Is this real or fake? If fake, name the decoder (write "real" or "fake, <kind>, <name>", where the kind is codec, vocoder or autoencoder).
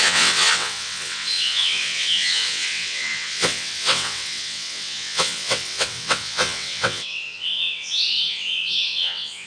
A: fake, vocoder, WaveNeXt